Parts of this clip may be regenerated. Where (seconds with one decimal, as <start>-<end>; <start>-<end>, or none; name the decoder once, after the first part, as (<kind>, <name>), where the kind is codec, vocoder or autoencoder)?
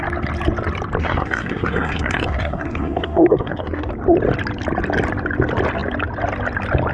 1.0-3.9 (codec, SNAC)